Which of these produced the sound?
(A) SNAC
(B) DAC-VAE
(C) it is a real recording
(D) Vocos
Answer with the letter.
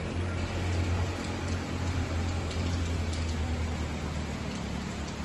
C